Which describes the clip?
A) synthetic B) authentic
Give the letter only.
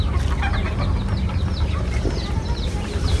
B